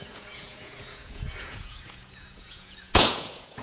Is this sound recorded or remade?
remade